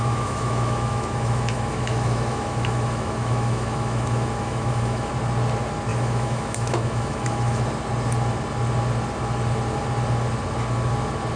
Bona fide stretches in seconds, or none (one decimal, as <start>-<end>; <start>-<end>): 5.1-5.9; 7.6-11.4